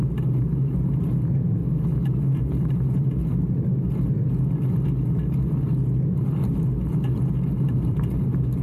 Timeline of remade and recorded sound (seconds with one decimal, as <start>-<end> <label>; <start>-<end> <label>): 0.0-1.6 remade; 1.6-2.2 recorded; 2.2-3.2 remade; 3.2-7.5 recorded; 7.5-8.6 remade